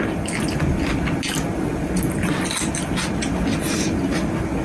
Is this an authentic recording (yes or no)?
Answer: yes